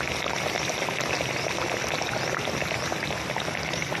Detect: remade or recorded recorded